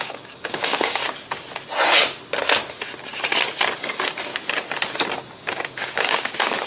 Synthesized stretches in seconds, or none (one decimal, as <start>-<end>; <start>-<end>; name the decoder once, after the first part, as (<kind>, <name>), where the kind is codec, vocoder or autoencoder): 0.0-1.0 (codec, DAC); 3.7-4.3; 5.3-6.7